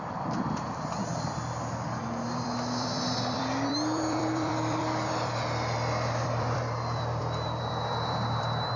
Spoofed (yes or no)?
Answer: yes